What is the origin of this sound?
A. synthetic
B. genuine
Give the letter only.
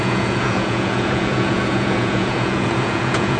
A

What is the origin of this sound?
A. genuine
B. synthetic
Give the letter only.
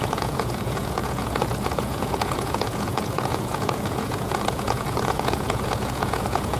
B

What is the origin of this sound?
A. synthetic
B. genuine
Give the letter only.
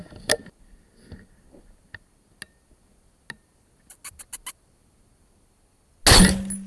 B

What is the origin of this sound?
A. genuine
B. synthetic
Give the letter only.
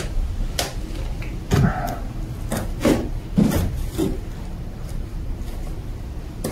A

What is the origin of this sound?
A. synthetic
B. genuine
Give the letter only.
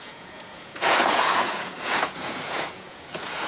A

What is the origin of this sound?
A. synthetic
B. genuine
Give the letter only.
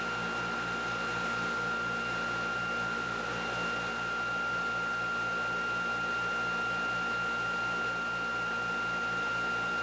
B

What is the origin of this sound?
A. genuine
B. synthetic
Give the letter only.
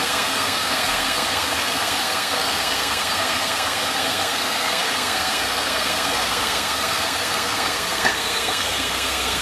B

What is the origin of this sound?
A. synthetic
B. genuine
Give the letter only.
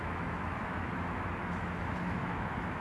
A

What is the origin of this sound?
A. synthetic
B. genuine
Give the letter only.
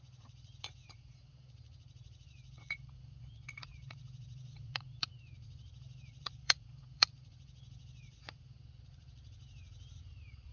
A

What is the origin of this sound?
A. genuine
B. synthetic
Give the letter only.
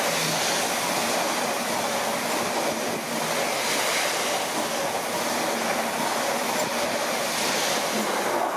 A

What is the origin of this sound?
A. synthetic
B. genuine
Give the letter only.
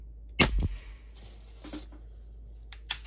B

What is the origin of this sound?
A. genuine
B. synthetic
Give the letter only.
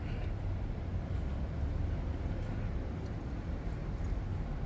A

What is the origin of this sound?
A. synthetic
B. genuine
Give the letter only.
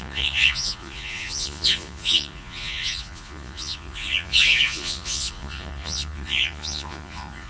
A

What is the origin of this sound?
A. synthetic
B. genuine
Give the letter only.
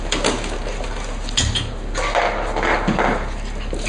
B